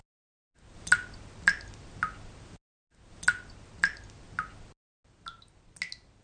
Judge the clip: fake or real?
real